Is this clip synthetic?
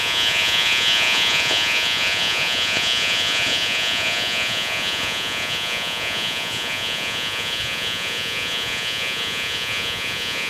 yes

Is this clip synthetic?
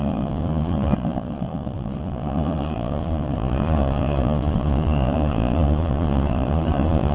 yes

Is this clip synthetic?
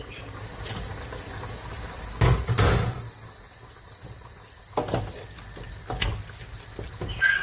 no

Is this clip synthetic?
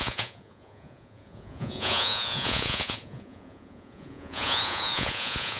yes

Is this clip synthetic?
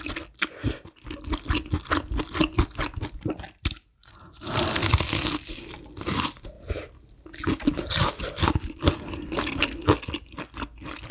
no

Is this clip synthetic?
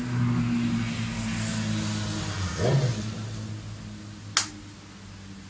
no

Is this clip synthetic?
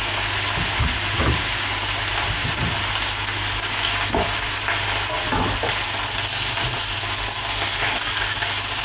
no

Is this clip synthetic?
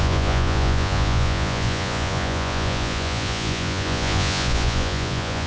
yes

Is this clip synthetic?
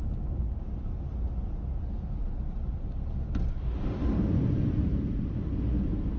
no